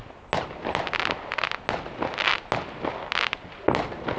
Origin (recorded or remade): recorded